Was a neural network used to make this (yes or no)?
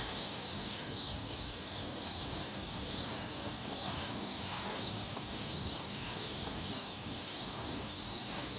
yes